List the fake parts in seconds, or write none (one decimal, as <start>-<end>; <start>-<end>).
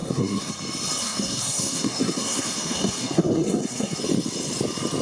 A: 0.0-0.5; 1.0-4.0